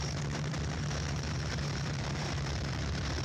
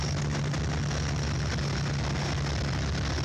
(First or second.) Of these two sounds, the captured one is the second